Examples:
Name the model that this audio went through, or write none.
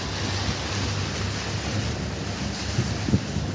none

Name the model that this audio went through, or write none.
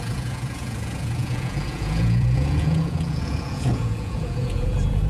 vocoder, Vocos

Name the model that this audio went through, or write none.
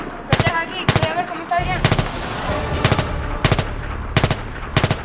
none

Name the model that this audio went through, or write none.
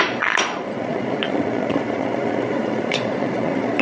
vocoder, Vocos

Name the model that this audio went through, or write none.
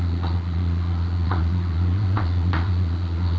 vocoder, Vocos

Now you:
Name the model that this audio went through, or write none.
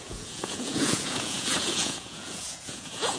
vocoder, Vocos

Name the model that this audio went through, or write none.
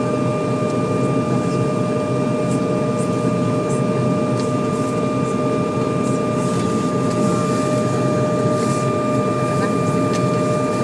none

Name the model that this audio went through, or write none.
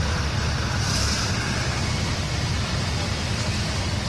none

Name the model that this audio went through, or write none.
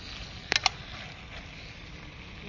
none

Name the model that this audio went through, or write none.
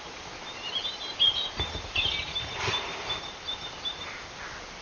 none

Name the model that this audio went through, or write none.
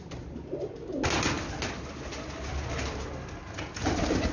none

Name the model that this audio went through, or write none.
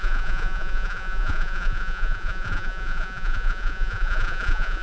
vocoder, Vocos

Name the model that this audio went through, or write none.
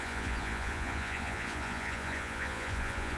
vocoder, Vocos